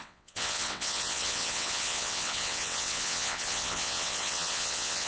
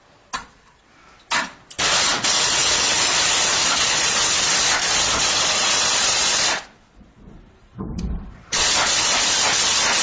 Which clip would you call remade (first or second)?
first